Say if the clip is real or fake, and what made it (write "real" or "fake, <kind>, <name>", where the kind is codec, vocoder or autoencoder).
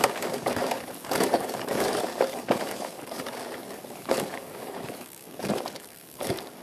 fake, codec, DAC